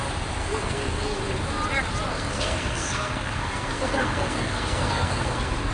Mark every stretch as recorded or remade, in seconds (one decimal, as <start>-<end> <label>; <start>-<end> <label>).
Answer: 0.0-0.4 recorded; 0.4-1.2 remade; 1.2-2.1 recorded; 2.1-5.7 remade